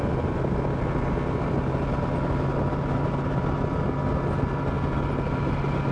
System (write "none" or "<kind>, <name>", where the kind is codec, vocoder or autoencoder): none